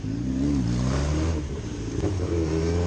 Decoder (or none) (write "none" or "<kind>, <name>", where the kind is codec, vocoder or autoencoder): none